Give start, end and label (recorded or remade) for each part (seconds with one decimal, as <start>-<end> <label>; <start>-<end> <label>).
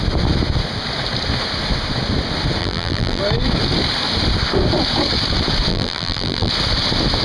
0.0-2.6 recorded; 2.6-3.2 remade; 3.2-5.7 recorded; 5.7-6.5 remade; 6.5-7.2 recorded